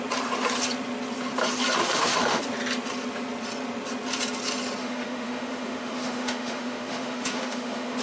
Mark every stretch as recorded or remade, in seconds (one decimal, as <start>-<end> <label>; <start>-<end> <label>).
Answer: 0.0-1.8 recorded; 1.8-2.4 remade; 2.4-4.8 recorded; 4.8-8.0 remade